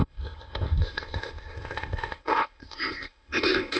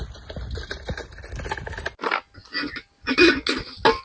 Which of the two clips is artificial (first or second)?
first